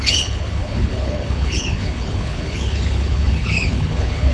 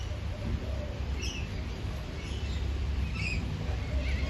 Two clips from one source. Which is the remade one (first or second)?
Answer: first